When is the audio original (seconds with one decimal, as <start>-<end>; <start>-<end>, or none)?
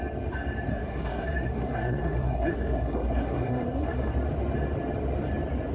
0.0-0.7; 4.1-5.7